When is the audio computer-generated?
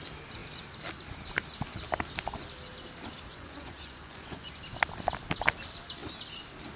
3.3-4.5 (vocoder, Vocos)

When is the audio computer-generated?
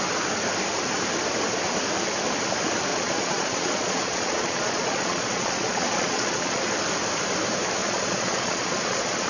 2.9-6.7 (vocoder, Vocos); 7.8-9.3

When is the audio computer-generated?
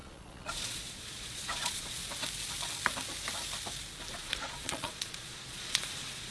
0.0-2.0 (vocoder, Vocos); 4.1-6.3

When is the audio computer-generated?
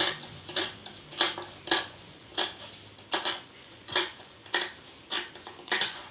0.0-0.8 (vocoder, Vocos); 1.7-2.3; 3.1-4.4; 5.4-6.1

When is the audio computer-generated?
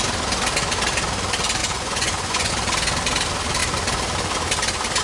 1.6-2.5 (vocoder, Vocos)